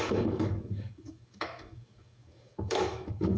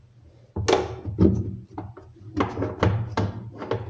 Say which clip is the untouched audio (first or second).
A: second